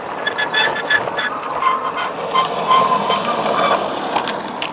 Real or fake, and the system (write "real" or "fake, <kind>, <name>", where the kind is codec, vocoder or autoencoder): real